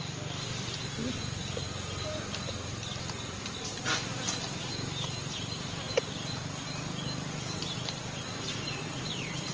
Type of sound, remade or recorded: recorded